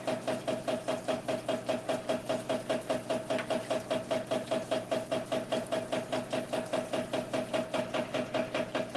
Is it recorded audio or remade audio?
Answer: recorded